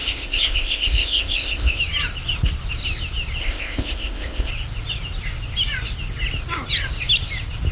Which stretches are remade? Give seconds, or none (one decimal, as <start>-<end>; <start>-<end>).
0.0-1.8; 3.4-4.5